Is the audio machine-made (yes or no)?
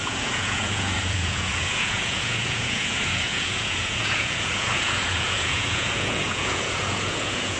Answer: yes